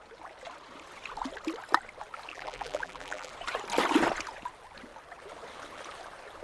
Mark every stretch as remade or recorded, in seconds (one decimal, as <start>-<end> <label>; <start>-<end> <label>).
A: 0.0-2.3 recorded; 2.3-3.3 remade; 3.3-6.4 recorded